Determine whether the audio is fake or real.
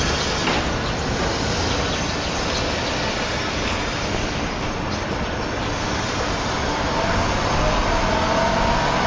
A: real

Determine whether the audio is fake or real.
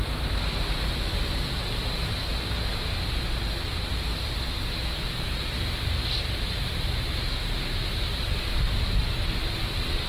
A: fake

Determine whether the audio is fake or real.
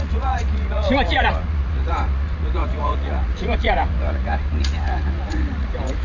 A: fake